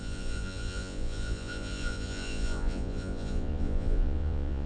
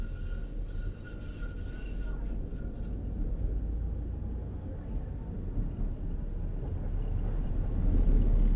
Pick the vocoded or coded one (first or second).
first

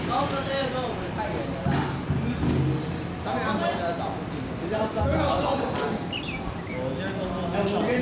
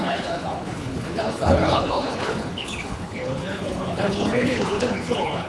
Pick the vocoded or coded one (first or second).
second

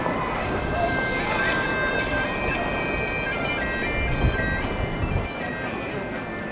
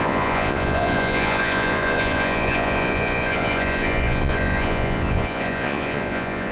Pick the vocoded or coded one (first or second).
second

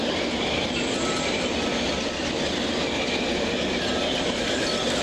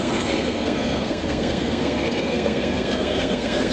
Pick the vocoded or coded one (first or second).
second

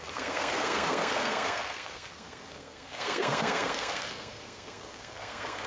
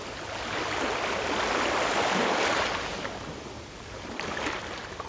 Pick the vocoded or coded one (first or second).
first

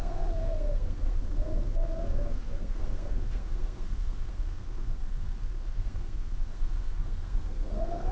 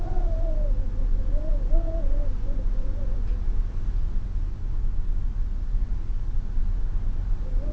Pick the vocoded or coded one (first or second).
first